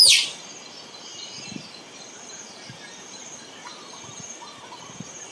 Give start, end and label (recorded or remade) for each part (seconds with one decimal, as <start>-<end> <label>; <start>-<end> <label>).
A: 0.0-5.3 recorded

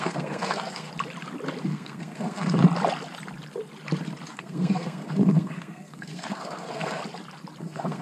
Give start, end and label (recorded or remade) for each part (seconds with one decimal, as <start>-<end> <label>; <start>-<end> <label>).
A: 0.0-0.9 remade; 0.9-1.6 recorded; 1.6-2.6 remade; 2.6-4.3 recorded; 4.3-7.0 remade; 7.0-7.6 recorded; 7.6-8.0 remade

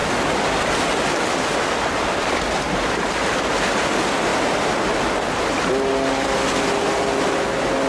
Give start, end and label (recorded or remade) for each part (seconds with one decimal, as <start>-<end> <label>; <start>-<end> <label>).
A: 0.0-7.9 recorded

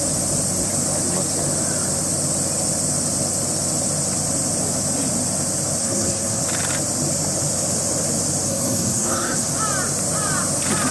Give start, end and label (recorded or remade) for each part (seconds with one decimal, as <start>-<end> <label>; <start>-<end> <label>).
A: 0.0-5.8 recorded; 5.8-6.4 remade; 6.4-8.5 recorded; 8.5-9.5 remade; 9.5-10.9 recorded

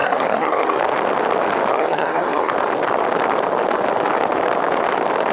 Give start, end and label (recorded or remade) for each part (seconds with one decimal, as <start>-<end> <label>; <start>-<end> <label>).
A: 0.0-0.8 remade; 0.8-1.7 recorded; 1.7-2.5 remade; 2.5-5.3 recorded

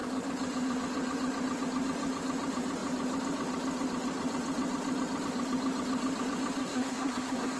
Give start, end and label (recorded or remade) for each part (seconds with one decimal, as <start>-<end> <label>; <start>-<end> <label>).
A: 0.0-6.6 recorded; 6.6-7.6 remade